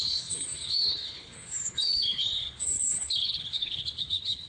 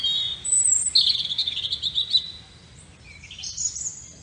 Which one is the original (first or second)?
second